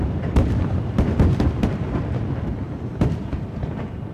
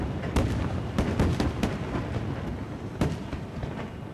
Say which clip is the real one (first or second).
second